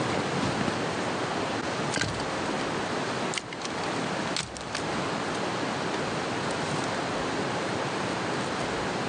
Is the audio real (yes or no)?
yes